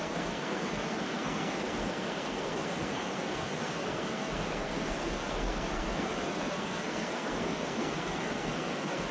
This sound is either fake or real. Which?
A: fake